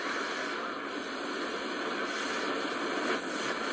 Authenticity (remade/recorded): recorded